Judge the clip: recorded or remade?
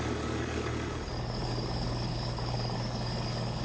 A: remade